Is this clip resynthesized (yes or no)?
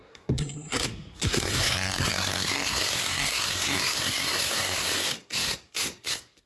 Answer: yes